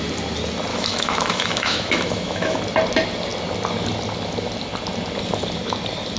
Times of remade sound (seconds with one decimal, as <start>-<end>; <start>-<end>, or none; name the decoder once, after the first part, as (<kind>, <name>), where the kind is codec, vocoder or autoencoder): 0.7-2.6 (autoencoder, DAC-VAE)